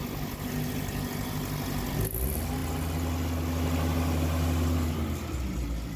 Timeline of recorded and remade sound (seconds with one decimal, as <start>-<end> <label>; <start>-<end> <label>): 0.0-6.0 recorded